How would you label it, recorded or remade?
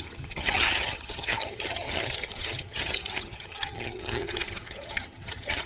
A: remade